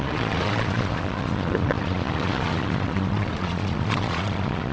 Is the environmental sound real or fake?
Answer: fake